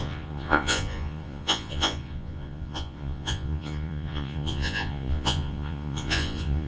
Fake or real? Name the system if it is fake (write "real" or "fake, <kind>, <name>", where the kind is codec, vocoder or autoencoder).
fake, vocoder, Vocos